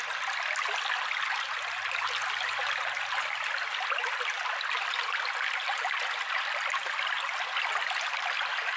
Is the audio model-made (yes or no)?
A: no